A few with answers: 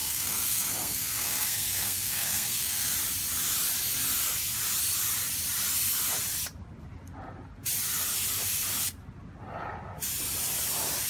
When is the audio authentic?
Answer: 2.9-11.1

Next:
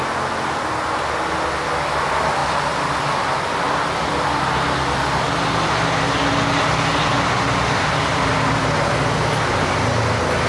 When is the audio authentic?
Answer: 0.0-10.5

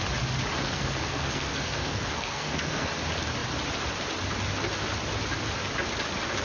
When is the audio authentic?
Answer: 0.0-0.5; 2.9-6.4